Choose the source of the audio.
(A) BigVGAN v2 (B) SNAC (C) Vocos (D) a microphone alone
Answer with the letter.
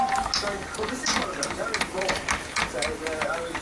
D